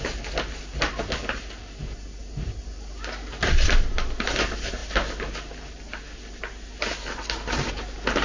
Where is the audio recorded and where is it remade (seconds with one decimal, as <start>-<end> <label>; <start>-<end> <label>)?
0.0-8.2 recorded